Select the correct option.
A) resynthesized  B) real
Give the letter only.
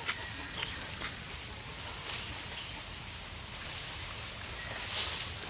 B